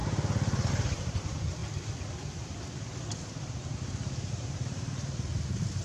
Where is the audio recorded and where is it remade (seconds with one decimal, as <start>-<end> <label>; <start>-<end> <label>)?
0.0-0.7 recorded; 0.7-1.6 remade; 1.6-4.3 recorded; 4.3-4.7 remade; 4.7-5.8 recorded